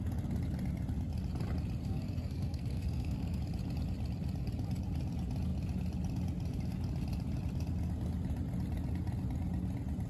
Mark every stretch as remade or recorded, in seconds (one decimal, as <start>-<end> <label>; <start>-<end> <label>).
0.0-1.8 recorded; 1.8-3.4 remade; 3.4-10.1 recorded

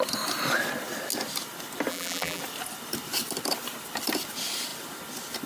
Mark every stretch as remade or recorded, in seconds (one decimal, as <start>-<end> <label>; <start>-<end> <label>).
0.0-1.9 recorded; 1.9-2.4 remade; 2.4-5.5 recorded

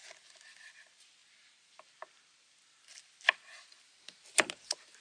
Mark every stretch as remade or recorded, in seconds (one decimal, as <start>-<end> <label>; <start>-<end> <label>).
0.0-5.0 recorded

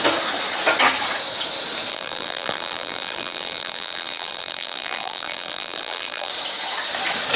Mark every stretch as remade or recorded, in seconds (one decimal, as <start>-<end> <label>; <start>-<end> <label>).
0.0-1.9 recorded; 1.9-6.3 remade; 6.3-7.4 recorded

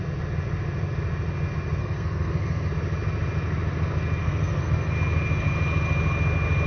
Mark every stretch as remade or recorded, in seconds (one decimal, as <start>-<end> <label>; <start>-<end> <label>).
0.0-1.8 recorded; 1.8-2.7 remade; 2.7-4.2 recorded; 4.2-4.9 remade; 4.9-6.7 recorded

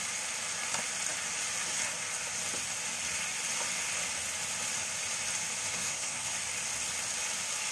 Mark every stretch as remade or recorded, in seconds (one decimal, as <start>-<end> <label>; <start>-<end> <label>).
0.0-5.7 recorded; 5.7-6.3 remade; 6.3-7.7 recorded